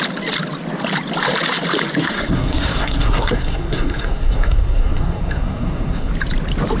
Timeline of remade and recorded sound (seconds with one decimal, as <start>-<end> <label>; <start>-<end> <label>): 0.0-2.0 recorded; 2.0-6.1 remade; 6.1-6.8 recorded